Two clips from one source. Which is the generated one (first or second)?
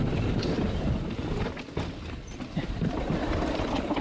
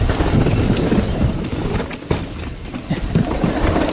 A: second